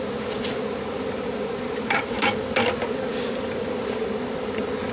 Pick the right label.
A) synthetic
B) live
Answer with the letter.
B